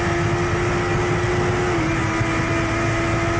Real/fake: real